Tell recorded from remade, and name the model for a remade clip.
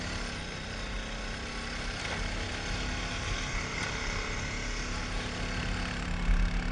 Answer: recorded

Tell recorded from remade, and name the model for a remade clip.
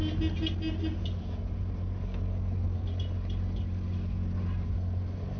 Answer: recorded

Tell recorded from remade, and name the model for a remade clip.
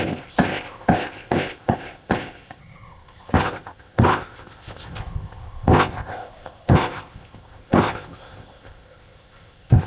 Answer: remade, codec, ZipCodec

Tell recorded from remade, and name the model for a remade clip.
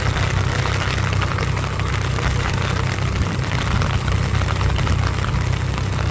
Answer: recorded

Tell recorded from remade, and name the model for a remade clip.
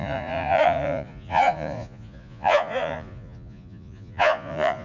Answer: remade, vocoder, Vocos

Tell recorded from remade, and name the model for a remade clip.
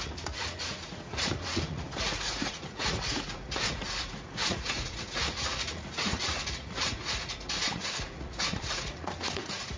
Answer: remade, vocoder, Vocos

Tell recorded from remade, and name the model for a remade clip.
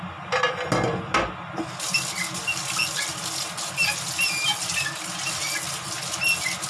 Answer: recorded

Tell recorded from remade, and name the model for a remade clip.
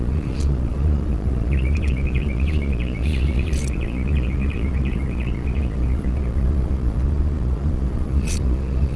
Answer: remade, vocoder, Vocos